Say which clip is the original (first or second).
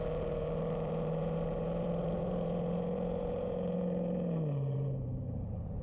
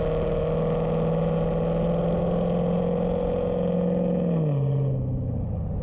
second